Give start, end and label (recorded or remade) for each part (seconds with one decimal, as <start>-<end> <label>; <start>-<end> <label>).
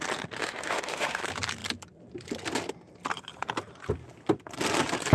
0.0-0.4 recorded; 0.4-1.2 remade; 1.2-5.1 recorded